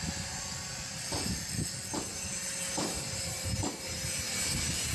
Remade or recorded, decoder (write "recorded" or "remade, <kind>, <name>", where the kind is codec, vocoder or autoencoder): recorded